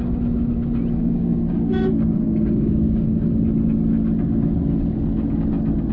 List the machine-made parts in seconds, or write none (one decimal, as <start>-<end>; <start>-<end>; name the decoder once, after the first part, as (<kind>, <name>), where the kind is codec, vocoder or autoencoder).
1.0-3.3 (codec, DAC)